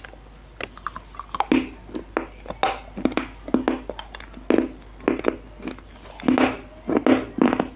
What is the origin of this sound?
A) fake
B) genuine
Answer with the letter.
B